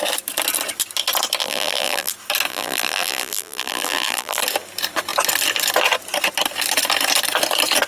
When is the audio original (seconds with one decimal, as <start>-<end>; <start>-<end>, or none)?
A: 0.0-1.4; 2.1-2.5; 4.4-7.9

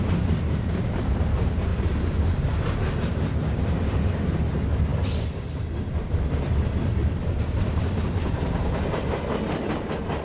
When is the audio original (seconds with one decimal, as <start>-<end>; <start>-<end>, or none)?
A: 0.0-10.2